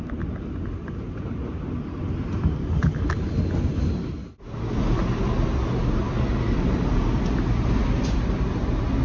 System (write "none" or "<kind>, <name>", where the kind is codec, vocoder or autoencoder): none